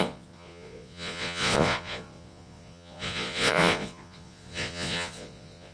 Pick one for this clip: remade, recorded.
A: remade